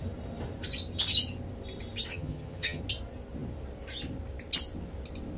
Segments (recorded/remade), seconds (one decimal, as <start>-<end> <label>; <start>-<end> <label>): 0.0-2.1 recorded; 2.1-2.8 remade; 2.8-5.4 recorded